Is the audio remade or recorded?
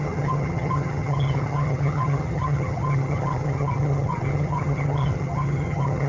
remade